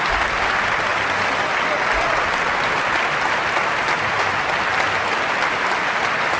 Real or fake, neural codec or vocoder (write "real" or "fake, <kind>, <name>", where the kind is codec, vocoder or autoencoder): real